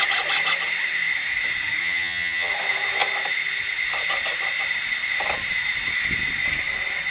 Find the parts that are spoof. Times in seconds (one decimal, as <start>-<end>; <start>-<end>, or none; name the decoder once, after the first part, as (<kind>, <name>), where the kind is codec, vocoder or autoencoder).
1.8-2.5 (vocoder, HiFi-GAN)